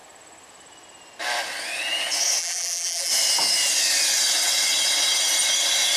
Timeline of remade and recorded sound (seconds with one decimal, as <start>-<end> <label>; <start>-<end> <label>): 0.0-2.4 recorded; 2.4-3.1 remade; 3.1-6.0 recorded